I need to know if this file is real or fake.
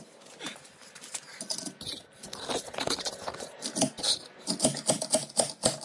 real